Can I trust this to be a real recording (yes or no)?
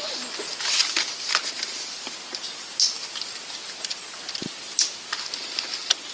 yes